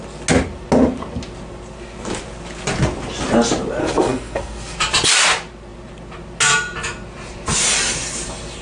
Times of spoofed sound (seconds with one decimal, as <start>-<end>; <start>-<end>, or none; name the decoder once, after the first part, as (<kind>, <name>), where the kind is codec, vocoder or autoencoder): 3.8-4.8 (codec, SNAC)